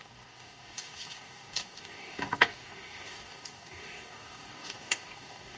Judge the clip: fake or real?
fake